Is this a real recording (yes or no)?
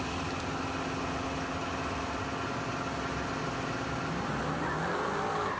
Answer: yes